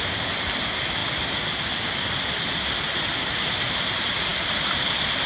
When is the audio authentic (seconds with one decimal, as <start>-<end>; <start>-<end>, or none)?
0.0-5.3